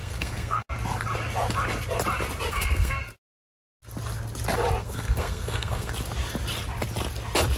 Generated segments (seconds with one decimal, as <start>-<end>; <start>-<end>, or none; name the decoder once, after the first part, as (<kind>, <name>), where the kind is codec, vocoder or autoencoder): 0.0-0.7 (codec, SNAC); 2.5-3.0; 4.8-5.9